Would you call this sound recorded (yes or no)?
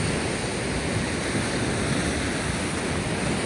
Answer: yes